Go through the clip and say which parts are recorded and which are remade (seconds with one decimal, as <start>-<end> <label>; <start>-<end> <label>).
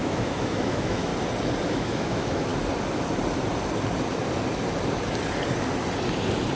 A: 0.0-1.1 remade; 1.1-1.7 recorded; 1.7-2.5 remade; 2.5-6.6 recorded